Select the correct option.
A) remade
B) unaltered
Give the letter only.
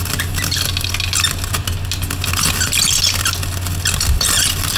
B